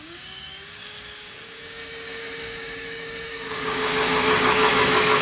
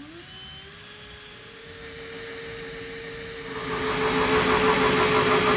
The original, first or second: second